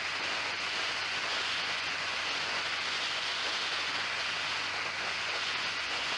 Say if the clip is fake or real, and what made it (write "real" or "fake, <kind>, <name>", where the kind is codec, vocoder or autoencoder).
fake, vocoder, Vocos